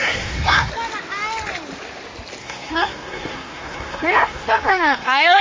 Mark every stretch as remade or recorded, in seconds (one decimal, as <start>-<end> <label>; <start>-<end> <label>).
0.0-0.7 remade; 0.7-2.4 recorded; 2.4-5.4 remade